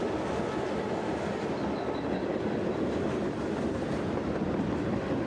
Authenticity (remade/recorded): remade